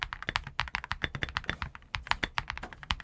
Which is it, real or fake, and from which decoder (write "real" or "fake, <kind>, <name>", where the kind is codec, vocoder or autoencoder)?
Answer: real